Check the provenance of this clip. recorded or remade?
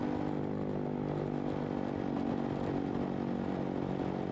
recorded